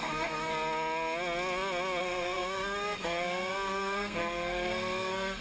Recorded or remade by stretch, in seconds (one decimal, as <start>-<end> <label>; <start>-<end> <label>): 0.0-0.5 remade; 0.5-2.0 recorded; 2.0-5.4 remade